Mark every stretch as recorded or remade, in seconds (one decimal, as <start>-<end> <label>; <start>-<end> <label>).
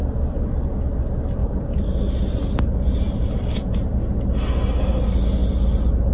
0.0-1.4 recorded; 1.4-3.9 remade; 3.9-5.4 recorded; 5.4-6.1 remade